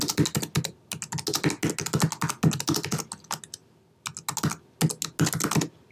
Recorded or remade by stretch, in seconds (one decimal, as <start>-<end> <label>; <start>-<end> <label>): 0.0-5.9 recorded